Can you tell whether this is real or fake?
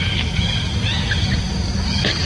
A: real